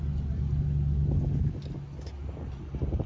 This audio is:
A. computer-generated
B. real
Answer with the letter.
B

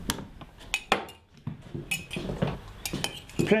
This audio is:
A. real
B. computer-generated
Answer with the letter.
A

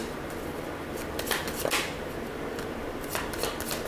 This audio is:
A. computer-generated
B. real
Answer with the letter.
B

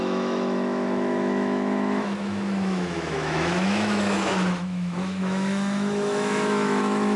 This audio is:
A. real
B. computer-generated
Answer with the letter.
B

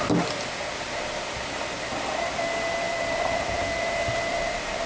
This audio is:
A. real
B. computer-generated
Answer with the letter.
A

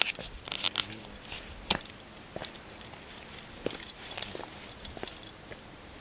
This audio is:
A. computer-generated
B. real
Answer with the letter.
B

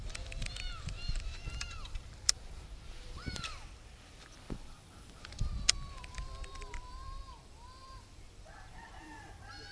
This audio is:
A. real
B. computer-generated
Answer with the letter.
B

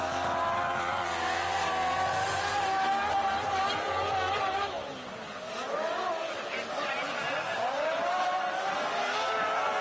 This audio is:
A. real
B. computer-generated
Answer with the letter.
A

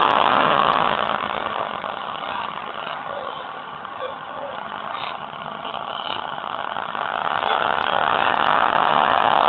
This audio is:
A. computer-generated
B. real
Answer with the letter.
A